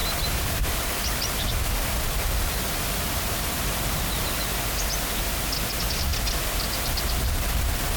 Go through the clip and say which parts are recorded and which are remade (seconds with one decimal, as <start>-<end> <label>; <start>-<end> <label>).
0.0-4.5 remade; 4.5-5.1 recorded; 5.1-6.1 remade; 6.1-6.7 recorded; 6.7-8.0 remade